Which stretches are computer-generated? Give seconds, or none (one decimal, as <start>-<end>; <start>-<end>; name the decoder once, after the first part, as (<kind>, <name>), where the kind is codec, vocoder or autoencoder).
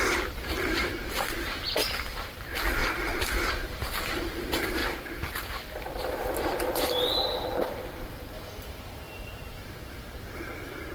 0.0-2.8 (vocoder, BigVGAN v2); 3.5-4.8; 9.9-10.9